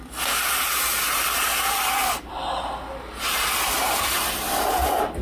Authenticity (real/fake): real